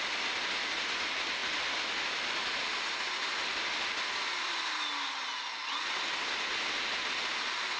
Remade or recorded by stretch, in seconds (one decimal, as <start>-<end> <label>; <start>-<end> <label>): 0.0-7.8 recorded